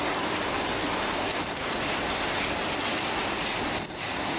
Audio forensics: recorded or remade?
recorded